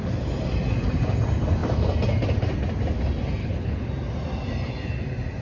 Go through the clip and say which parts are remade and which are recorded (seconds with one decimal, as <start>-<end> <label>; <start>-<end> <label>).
0.0-3.4 recorded; 3.4-3.9 remade; 3.9-5.4 recorded